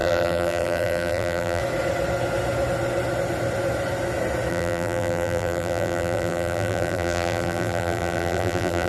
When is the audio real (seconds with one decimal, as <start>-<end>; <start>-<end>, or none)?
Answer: 1.6-4.5